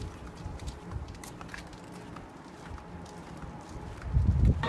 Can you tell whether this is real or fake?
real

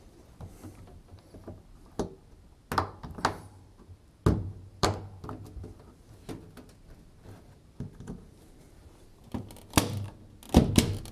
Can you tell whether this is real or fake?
real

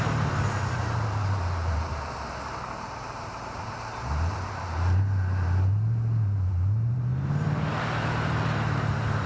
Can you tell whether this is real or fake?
fake